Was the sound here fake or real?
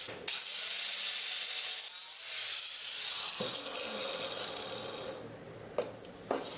real